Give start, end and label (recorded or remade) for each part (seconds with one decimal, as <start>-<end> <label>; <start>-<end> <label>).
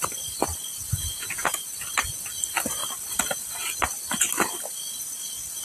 0.0-1.0 recorded; 1.0-1.6 remade; 1.6-5.6 recorded